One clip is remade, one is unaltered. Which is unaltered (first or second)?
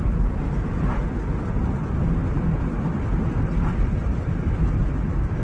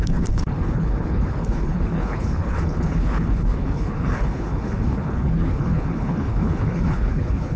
first